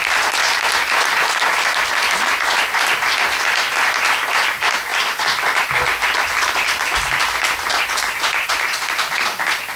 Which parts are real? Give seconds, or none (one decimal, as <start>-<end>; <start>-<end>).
0.0-4.9; 8.5-9.8